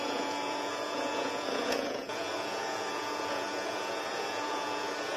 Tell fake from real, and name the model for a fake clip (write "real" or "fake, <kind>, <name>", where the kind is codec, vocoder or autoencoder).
fake, vocoder, Vocos